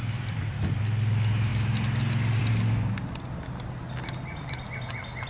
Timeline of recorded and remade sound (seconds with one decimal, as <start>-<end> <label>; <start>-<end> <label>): 0.0-5.3 recorded

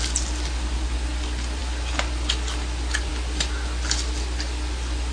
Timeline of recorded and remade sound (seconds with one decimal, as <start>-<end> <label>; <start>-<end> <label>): 0.0-5.1 recorded

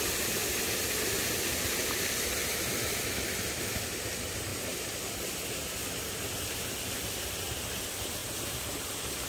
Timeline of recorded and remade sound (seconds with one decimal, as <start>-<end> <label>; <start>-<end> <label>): 0.0-2.4 recorded; 2.4-3.0 remade; 3.0-8.2 recorded; 8.2-8.9 remade; 8.9-9.3 recorded

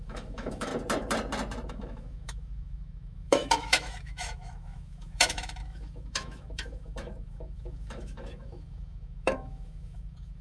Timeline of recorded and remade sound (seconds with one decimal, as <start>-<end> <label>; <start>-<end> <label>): 0.0-0.7 remade; 0.7-1.7 recorded; 1.7-10.4 remade

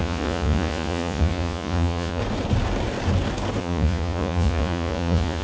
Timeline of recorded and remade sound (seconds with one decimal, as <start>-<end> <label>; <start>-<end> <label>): 0.0-2.2 remade; 2.2-3.6 recorded; 3.6-5.4 remade

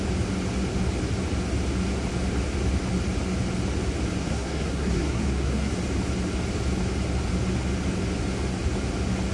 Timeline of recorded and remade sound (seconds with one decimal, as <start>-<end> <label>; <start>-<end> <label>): 0.0-4.2 recorded; 4.2-5.7 remade; 5.7-9.3 recorded

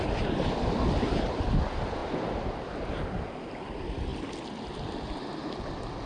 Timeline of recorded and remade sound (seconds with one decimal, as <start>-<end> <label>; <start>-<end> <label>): 0.0-6.1 recorded